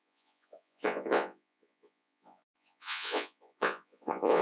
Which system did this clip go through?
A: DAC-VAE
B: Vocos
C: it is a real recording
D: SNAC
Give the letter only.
B